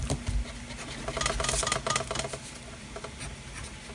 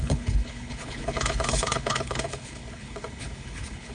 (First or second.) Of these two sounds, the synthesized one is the second